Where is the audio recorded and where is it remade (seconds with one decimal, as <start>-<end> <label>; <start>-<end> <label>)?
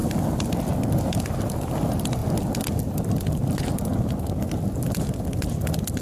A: 0.0-6.0 recorded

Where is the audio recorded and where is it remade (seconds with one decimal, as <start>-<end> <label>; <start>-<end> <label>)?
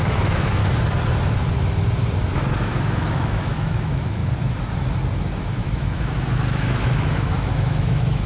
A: 0.0-0.6 remade; 0.6-2.6 recorded; 2.6-4.2 remade; 4.2-5.6 recorded; 5.6-8.3 remade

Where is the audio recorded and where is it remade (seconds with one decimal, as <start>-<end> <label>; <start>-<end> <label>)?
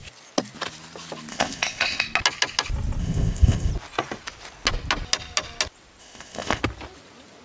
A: 0.0-1.3 recorded; 1.3-2.0 remade; 2.0-3.0 recorded; 3.0-3.7 remade; 3.7-6.0 recorded; 6.0-6.6 remade; 6.6-7.4 recorded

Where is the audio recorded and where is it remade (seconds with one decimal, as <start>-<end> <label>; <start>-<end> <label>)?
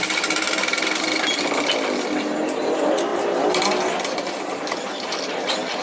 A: 0.0-5.8 recorded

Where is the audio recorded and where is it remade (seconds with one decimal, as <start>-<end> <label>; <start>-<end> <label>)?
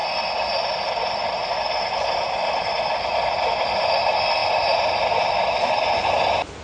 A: 0.0-6.6 recorded